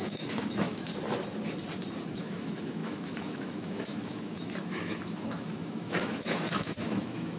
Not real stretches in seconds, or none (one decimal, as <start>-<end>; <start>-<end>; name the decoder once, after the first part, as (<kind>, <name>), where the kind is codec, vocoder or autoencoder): 0.0-0.9 (autoencoder, DAC-VAE); 2.1-7.4